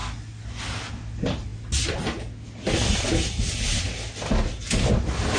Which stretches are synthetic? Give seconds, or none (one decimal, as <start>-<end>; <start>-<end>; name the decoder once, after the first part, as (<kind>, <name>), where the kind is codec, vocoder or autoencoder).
none